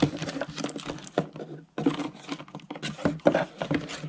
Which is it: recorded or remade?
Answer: recorded